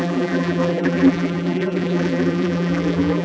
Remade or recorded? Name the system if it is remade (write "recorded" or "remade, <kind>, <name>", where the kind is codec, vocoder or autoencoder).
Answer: remade, vocoder, BigVGAN v2